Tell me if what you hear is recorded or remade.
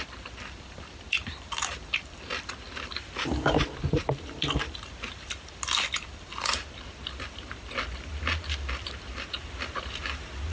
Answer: remade